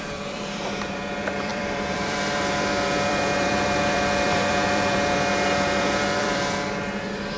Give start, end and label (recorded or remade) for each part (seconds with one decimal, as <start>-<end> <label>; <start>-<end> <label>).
0.0-7.4 remade